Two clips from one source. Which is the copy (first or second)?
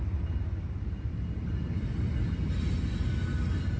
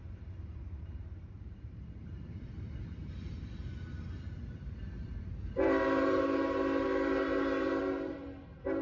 second